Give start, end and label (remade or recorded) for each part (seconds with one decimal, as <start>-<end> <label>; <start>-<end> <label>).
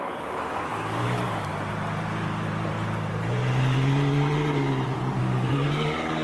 0.0-1.5 remade; 1.5-5.2 recorded; 5.2-6.2 remade